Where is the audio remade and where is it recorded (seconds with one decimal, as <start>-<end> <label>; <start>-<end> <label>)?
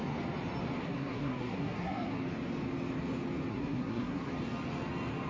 0.0-0.8 recorded; 0.8-2.2 remade; 2.2-3.5 recorded; 3.5-4.3 remade; 4.3-5.3 recorded